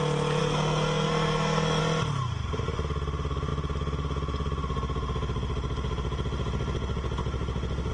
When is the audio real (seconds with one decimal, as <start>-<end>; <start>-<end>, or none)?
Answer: 0.0-0.4; 1.8-7.9